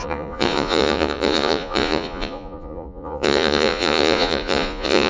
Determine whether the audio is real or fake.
fake